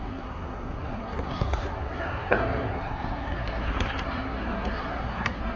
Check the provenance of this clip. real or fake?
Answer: fake